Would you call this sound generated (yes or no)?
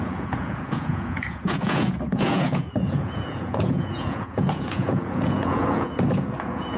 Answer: yes